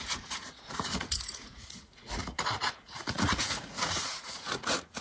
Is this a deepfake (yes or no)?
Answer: yes